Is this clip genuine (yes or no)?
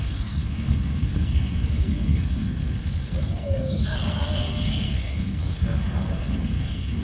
no